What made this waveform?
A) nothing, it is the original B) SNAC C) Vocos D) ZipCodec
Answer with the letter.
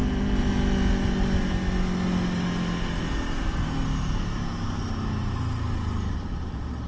A